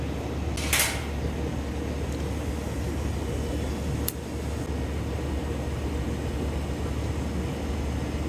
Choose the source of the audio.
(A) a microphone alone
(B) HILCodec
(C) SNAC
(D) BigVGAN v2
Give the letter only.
A